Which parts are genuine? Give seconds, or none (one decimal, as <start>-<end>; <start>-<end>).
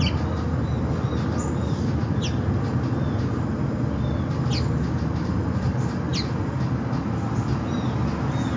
0.0-8.6